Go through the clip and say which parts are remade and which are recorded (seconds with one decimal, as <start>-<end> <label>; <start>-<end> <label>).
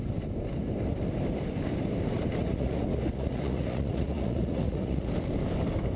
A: 0.0-2.4 recorded; 2.4-5.1 remade; 5.1-6.0 recorded